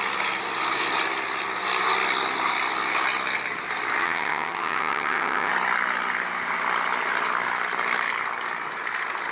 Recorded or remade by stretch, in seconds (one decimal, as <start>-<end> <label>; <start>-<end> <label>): 0.0-4.0 recorded; 4.0-5.5 remade; 5.5-9.3 recorded